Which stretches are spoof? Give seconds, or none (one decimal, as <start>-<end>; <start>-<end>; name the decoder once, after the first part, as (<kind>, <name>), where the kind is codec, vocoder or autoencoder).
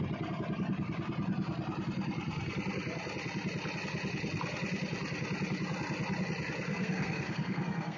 6.7-8.0 (codec, SNAC)